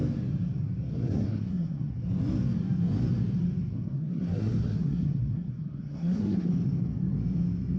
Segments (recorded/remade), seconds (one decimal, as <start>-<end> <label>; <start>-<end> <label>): 0.0-0.9 recorded; 0.9-1.9 remade; 1.9-3.7 recorded; 3.7-6.5 remade; 6.5-7.8 recorded